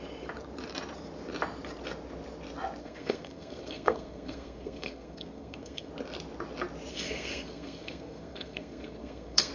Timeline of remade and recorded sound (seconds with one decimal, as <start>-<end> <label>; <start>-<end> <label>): 0.0-2.8 recorded; 2.8-5.9 remade; 5.9-6.9 recorded; 6.9-9.5 remade